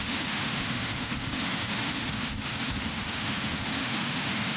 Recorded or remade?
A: remade